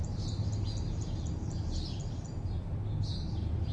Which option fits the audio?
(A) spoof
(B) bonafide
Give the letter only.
B